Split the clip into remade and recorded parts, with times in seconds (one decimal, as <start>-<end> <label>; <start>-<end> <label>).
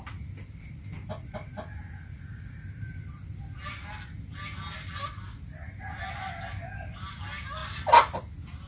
0.0-8.7 recorded